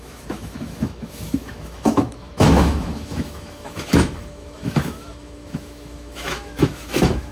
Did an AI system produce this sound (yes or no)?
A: yes